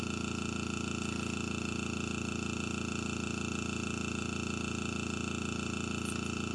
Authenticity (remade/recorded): recorded